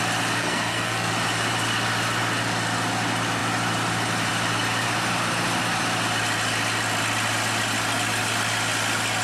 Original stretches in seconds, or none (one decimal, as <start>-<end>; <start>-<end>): 0.0-0.4; 1.1-9.2